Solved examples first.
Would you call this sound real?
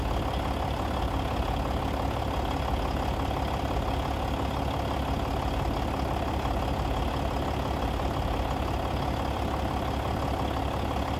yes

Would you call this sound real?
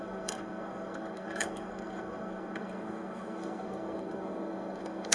no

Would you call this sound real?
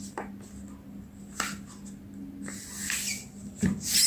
yes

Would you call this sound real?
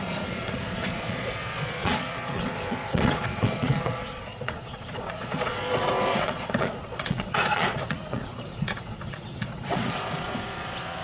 no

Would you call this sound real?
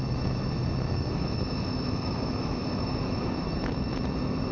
no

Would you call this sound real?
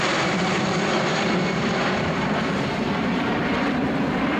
no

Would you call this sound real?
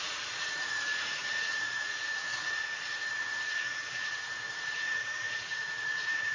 no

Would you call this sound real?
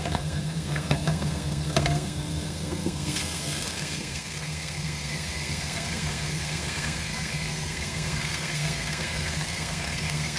no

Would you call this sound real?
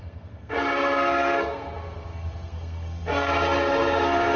no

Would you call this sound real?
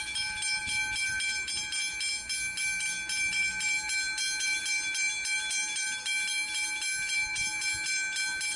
yes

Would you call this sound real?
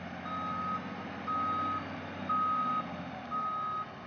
yes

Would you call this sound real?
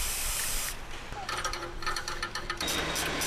no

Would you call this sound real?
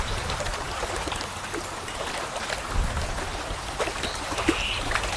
yes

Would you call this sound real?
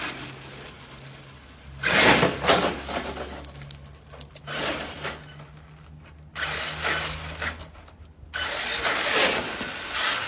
yes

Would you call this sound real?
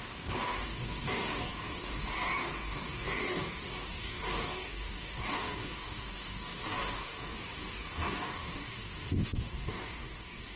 no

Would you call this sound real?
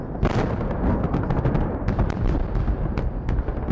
yes